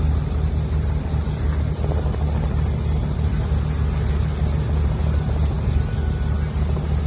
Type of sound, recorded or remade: recorded